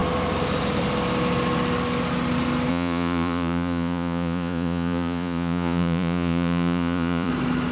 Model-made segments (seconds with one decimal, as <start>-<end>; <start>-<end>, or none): 2.7-7.3